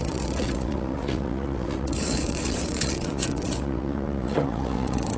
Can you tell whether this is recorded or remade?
remade